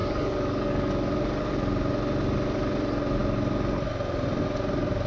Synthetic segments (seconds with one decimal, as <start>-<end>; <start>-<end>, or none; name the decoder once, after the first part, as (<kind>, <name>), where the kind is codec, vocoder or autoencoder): 0.0-0.9 (codec, DAC)